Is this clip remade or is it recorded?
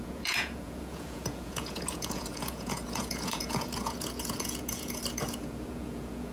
remade